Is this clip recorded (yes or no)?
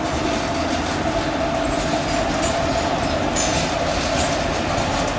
yes